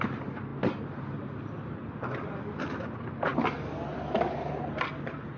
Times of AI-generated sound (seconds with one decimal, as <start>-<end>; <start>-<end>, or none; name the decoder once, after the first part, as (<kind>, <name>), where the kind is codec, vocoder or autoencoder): none